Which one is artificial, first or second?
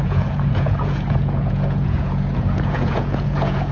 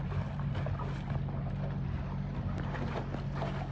first